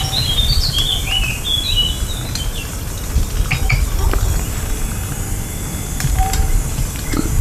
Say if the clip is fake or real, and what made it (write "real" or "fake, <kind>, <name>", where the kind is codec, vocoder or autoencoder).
real